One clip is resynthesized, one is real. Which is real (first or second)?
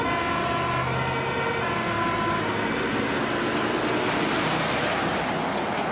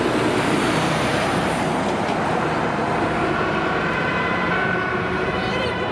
first